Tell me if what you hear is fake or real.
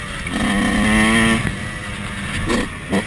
real